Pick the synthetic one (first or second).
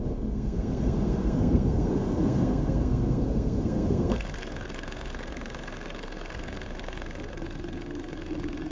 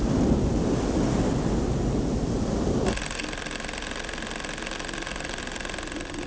first